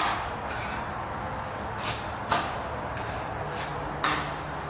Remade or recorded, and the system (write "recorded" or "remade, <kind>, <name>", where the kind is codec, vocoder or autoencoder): recorded